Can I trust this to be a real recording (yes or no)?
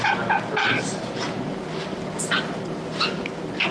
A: yes